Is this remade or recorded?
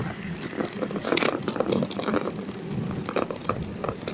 recorded